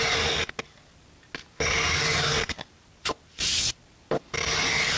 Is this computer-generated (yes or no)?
no